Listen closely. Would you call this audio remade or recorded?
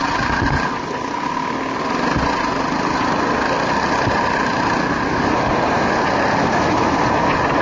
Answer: recorded